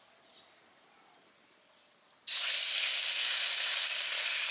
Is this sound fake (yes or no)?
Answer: no